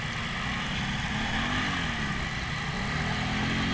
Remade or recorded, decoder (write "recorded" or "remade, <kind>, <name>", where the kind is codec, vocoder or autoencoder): recorded